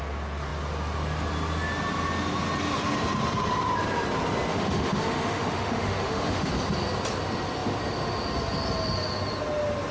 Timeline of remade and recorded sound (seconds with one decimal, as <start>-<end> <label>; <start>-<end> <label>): 0.0-4.5 recorded; 4.5-6.5 remade; 6.5-9.9 recorded